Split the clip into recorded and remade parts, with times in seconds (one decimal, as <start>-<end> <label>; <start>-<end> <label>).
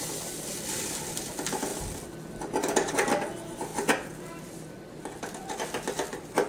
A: 0.0-6.5 recorded